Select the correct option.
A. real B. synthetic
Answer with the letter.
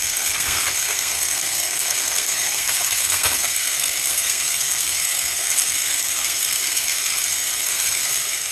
B